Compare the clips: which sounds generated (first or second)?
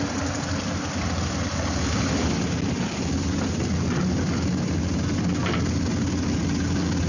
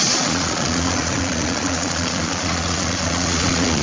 second